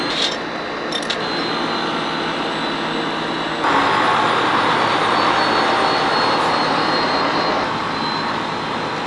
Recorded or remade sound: recorded